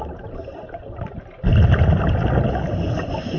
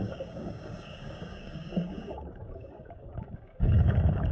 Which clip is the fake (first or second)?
second